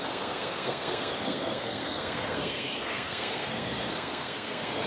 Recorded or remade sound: remade